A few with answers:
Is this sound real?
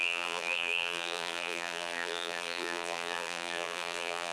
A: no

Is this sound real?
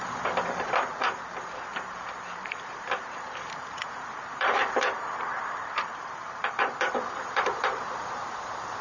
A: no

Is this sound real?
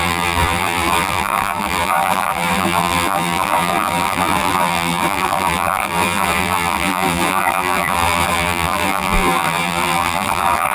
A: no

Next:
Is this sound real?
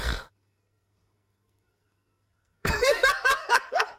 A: no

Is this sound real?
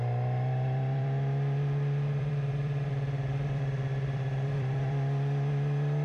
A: no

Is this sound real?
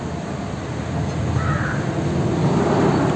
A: yes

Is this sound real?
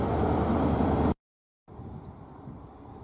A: no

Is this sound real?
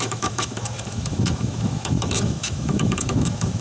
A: no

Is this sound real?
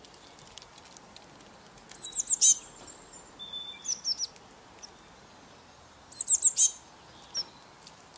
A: yes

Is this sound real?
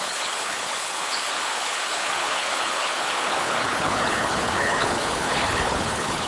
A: no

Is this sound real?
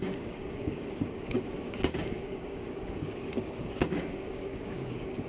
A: no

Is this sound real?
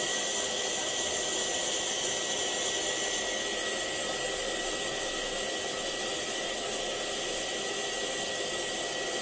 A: yes